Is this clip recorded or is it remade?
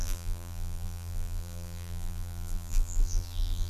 remade